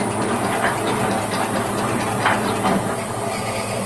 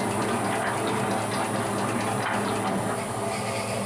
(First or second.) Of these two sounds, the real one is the second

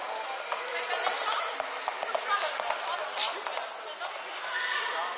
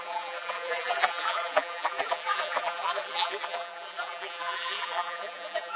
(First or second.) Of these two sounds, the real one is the first